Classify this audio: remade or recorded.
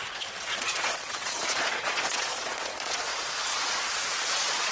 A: remade